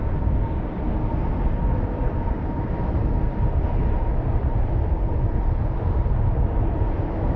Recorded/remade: recorded